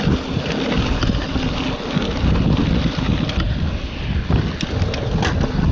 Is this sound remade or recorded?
recorded